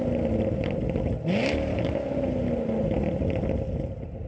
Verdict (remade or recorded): recorded